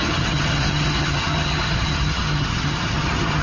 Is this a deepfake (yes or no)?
yes